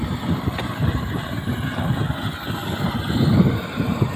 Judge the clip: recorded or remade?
recorded